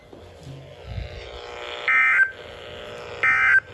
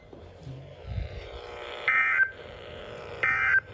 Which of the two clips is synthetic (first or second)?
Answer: second